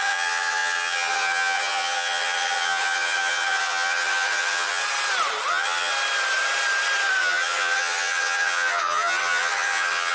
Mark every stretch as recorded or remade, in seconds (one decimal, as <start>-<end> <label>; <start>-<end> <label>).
0.0-4.8 remade; 4.8-5.5 recorded; 5.5-5.9 remade; 5.9-7.2 recorded; 7.2-10.1 remade